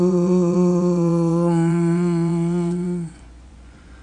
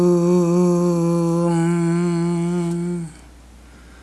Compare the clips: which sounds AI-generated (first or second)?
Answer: first